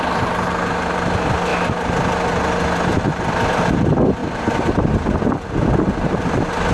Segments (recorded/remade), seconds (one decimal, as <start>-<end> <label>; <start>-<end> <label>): 0.0-6.7 recorded